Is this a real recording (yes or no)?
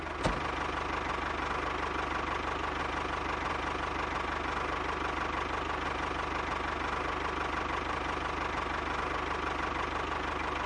yes